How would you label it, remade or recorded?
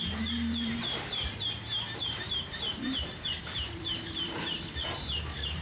remade